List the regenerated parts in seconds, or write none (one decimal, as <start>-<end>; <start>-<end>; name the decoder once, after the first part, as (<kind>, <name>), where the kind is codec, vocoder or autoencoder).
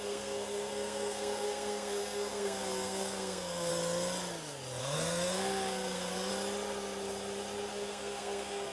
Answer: 0.0-3.7 (codec, SNAC); 4.8-6.3; 7.7-8.7